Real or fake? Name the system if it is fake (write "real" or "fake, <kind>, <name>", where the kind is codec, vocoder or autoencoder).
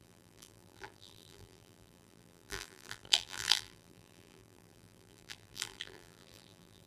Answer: fake, vocoder, BigVGAN v2